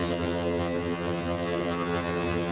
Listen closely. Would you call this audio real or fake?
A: fake